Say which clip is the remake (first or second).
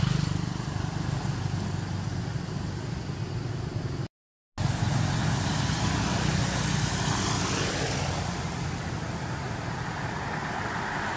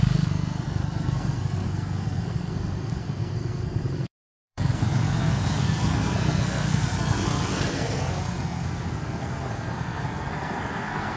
second